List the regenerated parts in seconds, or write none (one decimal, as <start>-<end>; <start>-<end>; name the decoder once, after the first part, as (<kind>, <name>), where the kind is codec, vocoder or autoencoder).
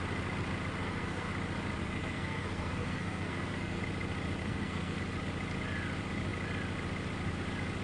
0.8-1.3 (codec, SNAC); 1.8-3.8; 4.4-5.0